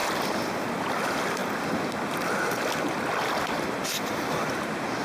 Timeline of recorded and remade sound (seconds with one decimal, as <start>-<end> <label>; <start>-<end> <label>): 0.0-0.7 recorded; 0.7-1.4 remade; 1.4-4.4 recorded; 4.4-5.0 remade